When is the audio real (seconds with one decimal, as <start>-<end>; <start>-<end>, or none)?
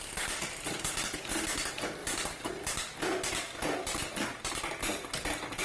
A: 0.0-5.6